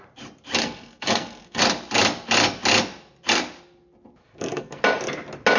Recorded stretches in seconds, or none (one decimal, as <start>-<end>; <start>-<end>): 0.0-0.6; 1.6-4.2; 4.8-5.6